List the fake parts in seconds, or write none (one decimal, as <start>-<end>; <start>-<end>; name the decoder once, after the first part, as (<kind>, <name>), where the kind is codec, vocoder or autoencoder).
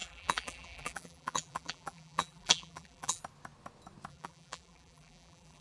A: 0.0-3.2 (vocoder, BigVGAN v2); 4.1-5.6